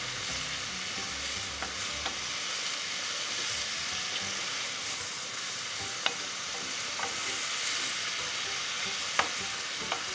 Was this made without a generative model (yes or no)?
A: yes